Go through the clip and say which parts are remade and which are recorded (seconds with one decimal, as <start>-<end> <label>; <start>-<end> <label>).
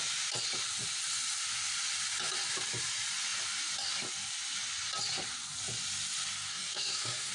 0.0-6.5 recorded; 6.5-7.3 remade